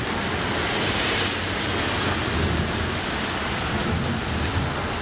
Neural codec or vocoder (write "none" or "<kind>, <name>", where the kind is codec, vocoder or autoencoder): none